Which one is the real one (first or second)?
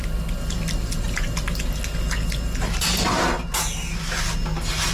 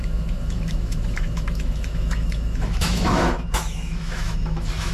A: first